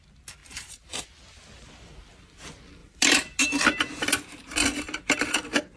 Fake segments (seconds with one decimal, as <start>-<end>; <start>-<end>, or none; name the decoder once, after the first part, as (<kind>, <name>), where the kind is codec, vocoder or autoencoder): 0.4-1.0 (vocoder, BigVGAN v2); 2.8-3.6